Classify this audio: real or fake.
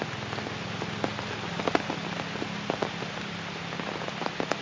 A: real